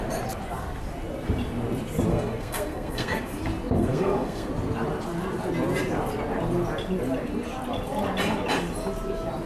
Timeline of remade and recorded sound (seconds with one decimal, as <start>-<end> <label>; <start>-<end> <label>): 0.0-2.1 recorded; 2.1-3.3 remade; 3.3-3.8 recorded; 3.8-4.5 remade; 4.5-9.5 recorded